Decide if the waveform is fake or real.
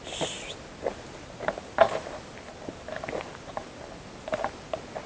real